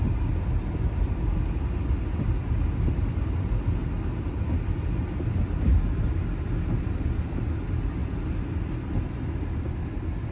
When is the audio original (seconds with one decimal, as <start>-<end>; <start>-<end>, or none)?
0.0-10.3